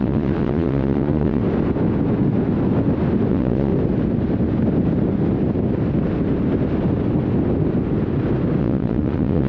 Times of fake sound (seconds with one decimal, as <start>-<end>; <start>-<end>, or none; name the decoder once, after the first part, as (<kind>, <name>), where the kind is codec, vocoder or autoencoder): 0.0-1.4 (vocoder, Vocos); 3.3-3.7; 8.6-9.5